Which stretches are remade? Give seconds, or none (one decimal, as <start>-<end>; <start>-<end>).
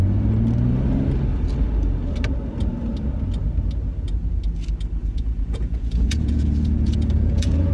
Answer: 5.0-7.7